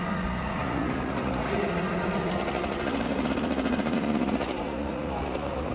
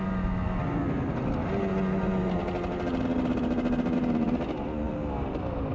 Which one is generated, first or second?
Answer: first